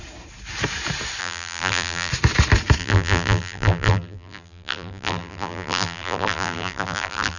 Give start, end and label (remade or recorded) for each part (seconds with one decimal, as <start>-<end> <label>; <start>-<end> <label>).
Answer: 0.0-1.2 recorded; 1.2-2.1 remade; 2.1-2.8 recorded; 2.8-7.4 remade

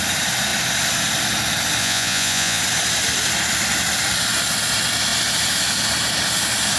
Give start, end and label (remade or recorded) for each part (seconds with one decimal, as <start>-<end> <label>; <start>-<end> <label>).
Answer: 0.0-1.8 recorded; 1.8-2.6 remade; 2.6-6.8 recorded

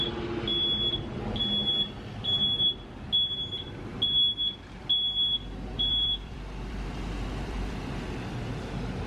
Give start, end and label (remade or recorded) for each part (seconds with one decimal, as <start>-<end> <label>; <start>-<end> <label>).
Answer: 0.0-5.7 recorded; 5.7-8.0 remade; 8.0-9.1 recorded

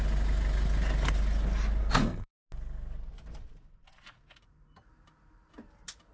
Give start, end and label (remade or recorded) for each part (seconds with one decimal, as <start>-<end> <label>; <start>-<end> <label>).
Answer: 0.0-1.8 recorded; 1.8-2.3 remade; 2.3-6.1 recorded

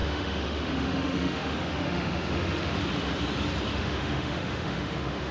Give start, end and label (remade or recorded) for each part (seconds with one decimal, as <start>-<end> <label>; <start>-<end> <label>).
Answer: 0.0-2.8 remade; 2.8-3.7 recorded; 3.7-5.3 remade

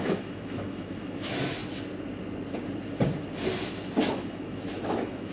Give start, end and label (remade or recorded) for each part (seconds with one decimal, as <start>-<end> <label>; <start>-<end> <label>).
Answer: 0.0-1.6 remade; 1.6-4.1 recorded; 4.1-5.3 remade